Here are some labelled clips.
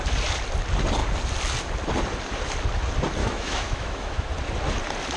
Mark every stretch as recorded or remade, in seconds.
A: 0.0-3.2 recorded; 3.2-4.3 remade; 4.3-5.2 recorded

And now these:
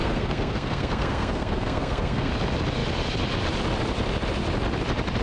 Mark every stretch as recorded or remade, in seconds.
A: 0.0-2.3 remade; 2.3-5.2 recorded